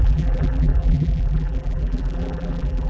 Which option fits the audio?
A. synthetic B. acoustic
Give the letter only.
A